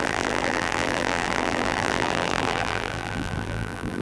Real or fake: fake